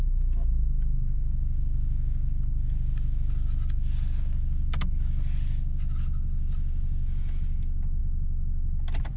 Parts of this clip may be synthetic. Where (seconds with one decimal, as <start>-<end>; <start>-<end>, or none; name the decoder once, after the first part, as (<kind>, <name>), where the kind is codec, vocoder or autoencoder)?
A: none